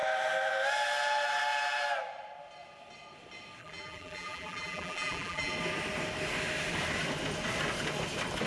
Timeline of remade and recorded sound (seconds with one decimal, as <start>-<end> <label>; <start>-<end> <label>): 0.0-3.6 recorded; 3.6-5.5 remade; 5.5-8.5 recorded